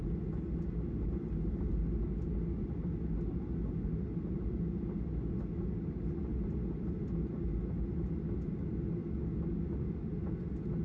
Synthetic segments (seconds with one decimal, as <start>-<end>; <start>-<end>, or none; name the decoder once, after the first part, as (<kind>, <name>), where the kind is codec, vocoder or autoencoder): none